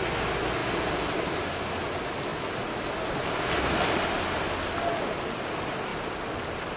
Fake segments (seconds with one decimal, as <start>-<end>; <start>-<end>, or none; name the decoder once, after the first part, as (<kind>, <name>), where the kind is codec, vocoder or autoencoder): none